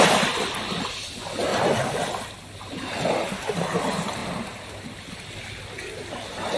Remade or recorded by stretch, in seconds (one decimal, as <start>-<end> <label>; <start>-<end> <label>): 0.0-6.6 recorded